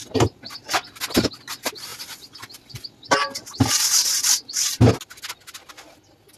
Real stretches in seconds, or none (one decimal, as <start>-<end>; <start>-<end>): 0.0-6.4